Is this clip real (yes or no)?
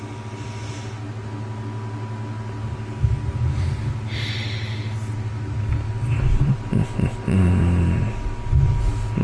yes